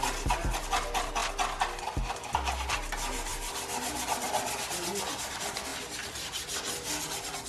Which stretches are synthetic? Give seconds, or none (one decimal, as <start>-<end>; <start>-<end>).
none